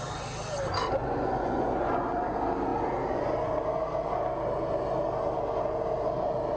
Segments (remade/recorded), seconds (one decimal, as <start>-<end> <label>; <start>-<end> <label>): 0.0-1.0 recorded; 1.0-2.1 remade; 2.1-6.6 recorded